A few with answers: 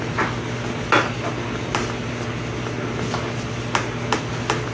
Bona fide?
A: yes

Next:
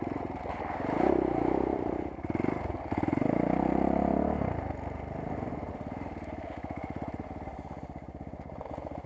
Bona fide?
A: yes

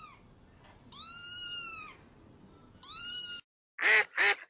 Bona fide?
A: yes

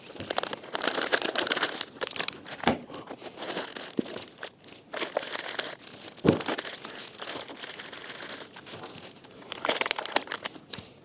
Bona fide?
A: yes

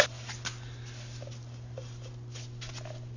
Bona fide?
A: yes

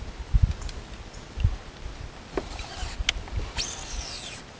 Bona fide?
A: yes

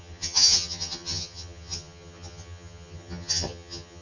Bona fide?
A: no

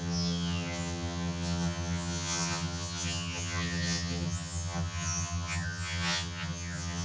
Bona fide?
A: no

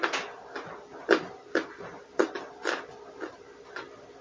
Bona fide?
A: yes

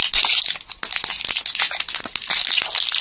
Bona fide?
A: yes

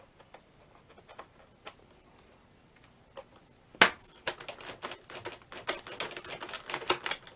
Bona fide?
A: yes